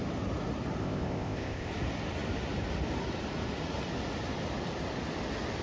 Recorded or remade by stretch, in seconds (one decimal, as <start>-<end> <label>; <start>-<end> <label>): 0.0-0.8 recorded; 0.8-1.7 remade; 1.7-5.6 recorded